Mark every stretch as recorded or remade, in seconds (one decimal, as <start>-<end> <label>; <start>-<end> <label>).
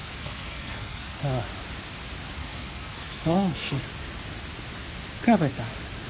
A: 0.0-1.2 remade; 1.2-2.4 recorded; 2.4-3.7 remade; 3.7-6.1 recorded